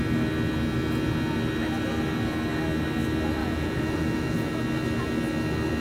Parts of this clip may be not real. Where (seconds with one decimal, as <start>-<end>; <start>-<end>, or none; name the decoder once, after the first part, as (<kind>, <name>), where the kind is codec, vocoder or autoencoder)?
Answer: 3.4-4.5 (vocoder, Vocos)